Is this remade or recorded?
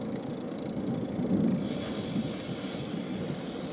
recorded